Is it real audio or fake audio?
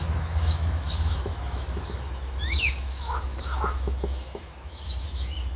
fake